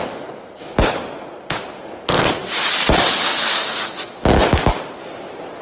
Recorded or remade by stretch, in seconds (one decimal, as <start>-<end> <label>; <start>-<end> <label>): 0.0-5.6 recorded

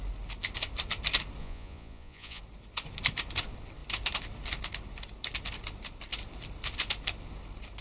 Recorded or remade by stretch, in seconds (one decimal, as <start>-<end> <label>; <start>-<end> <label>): 0.0-1.4 recorded; 1.4-2.4 remade; 2.4-7.8 recorded